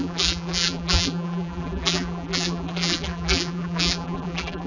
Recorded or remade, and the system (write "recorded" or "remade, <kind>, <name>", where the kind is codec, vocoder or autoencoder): remade, vocoder, BigVGAN v2